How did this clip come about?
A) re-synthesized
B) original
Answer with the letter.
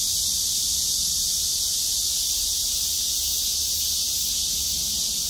B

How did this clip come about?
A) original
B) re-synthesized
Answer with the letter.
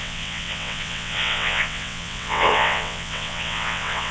B